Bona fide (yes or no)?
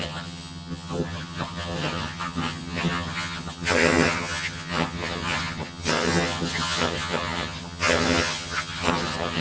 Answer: no